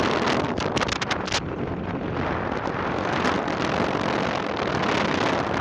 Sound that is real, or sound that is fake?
real